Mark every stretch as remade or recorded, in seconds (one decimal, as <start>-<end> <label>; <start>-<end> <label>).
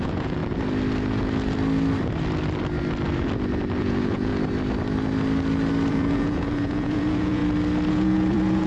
0.0-0.4 remade; 0.4-3.8 recorded; 3.8-4.3 remade; 4.3-5.9 recorded; 5.9-7.4 remade; 7.4-7.9 recorded; 7.9-8.7 remade